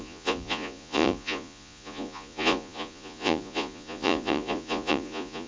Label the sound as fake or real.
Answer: fake